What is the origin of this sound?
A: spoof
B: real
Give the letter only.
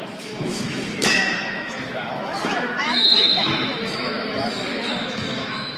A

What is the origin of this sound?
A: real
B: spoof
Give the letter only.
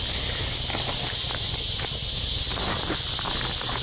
A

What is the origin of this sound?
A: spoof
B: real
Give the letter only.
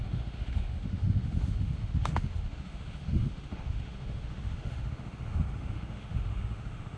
A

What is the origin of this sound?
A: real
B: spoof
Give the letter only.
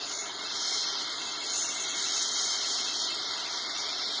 A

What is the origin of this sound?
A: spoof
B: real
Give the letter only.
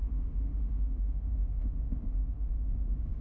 A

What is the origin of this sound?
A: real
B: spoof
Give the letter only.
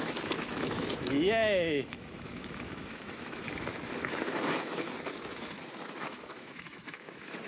B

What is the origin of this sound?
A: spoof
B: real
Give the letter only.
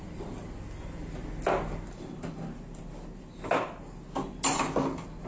B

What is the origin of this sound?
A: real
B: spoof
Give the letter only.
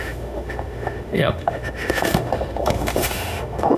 B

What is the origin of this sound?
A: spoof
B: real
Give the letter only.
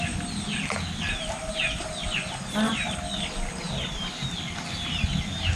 B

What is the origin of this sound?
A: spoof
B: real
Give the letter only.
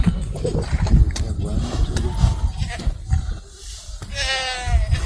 B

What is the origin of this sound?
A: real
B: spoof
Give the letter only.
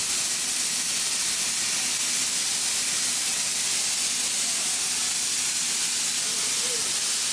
A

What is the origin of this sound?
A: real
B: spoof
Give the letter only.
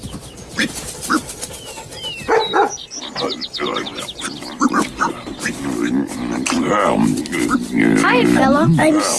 A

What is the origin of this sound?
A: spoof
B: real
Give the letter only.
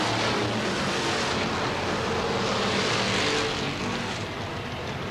B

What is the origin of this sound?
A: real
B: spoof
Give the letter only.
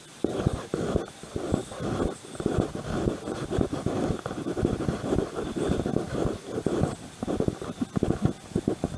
A